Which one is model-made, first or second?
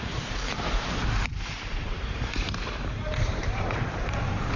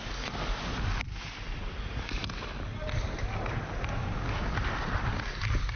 first